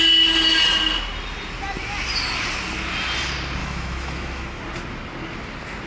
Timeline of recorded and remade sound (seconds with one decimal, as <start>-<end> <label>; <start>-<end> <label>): 0.0-3.6 recorded; 3.6-4.6 remade; 4.6-5.9 recorded

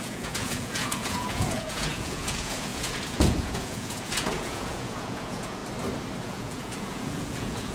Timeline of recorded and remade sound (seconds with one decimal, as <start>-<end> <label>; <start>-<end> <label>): 0.0-5.6 remade; 5.6-6.2 recorded; 6.2-7.7 remade

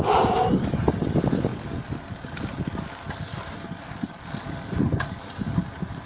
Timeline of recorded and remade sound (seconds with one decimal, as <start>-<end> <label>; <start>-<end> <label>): 0.0-6.1 recorded